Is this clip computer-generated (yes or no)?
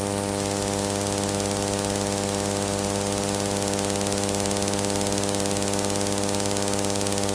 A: no